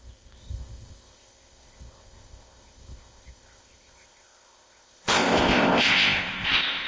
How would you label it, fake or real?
fake